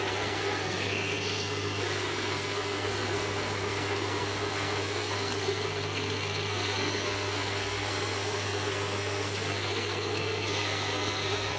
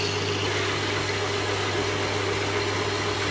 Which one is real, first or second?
second